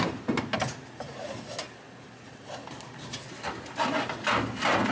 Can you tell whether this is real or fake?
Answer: real